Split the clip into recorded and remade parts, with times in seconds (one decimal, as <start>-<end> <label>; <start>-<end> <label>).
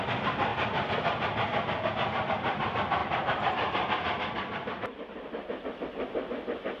0.0-6.8 recorded